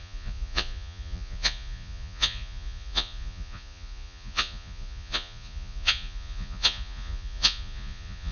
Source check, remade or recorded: remade